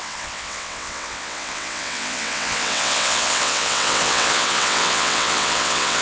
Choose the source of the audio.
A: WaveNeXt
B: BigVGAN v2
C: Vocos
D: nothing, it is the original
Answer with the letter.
A